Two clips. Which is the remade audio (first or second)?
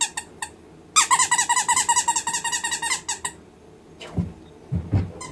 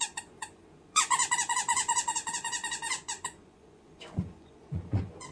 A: second